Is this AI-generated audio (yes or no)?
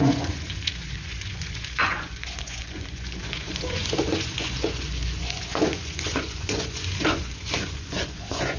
yes